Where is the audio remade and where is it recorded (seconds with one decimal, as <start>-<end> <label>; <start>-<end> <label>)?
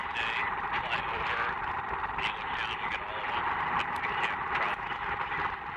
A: 0.0-5.8 recorded